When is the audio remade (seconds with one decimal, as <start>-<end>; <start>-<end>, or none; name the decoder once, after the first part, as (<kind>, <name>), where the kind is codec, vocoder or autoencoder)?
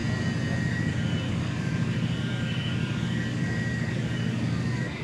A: 0.7-5.0 (codec, DAC)